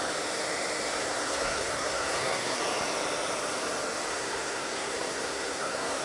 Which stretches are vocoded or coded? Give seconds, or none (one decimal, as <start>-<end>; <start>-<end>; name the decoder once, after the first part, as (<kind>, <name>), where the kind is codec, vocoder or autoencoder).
1.0-2.6 (codec, SNAC); 4.1-6.0